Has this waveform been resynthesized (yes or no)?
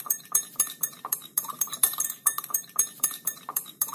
yes